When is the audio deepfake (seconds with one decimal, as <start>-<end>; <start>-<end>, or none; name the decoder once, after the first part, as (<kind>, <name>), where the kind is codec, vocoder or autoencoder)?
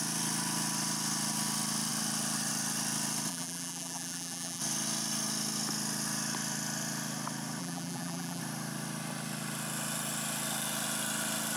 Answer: 3.3-4.6 (vocoder, BigVGAN v2); 7.6-8.4